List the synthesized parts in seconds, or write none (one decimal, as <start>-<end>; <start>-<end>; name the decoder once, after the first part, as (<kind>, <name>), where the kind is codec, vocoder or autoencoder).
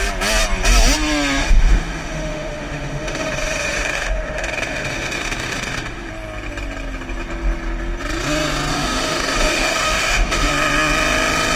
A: 1.4-6.1 (autoencoder, DAC-VAE); 8.7-10.5